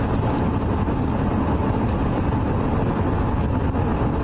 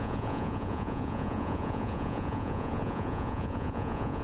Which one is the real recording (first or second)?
first